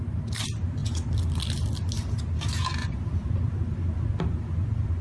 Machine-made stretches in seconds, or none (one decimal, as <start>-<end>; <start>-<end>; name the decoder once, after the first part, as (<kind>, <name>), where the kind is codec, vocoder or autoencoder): 2.8-3.3 (vocoder, BigVGAN v2)